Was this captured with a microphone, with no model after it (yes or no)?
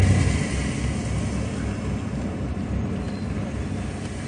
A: yes